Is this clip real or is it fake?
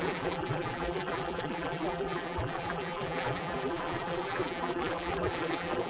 fake